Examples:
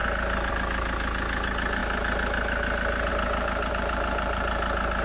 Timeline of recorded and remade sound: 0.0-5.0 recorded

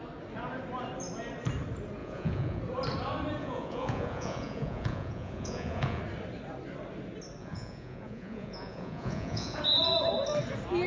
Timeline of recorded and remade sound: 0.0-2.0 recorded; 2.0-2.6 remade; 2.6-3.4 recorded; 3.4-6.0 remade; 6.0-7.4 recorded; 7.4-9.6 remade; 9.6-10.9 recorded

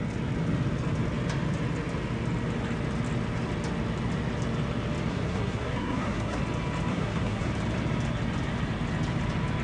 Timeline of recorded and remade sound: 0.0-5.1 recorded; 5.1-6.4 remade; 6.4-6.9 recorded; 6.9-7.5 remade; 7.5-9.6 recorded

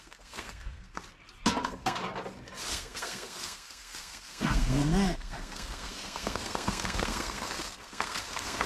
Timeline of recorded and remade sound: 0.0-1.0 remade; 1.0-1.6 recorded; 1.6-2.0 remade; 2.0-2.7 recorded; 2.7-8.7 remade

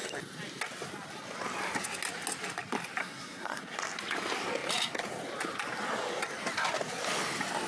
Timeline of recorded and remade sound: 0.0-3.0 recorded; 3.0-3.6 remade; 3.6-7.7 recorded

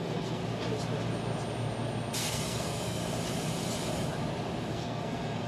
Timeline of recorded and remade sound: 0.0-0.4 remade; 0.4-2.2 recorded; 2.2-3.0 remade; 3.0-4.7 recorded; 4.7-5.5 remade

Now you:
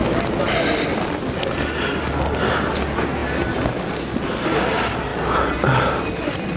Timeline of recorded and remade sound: 0.0-6.6 recorded

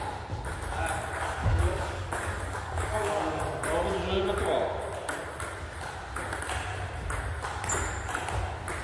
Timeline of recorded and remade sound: 0.0-1.4 recorded; 1.4-3.4 remade; 3.4-8.8 recorded